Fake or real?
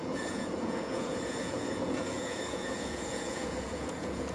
fake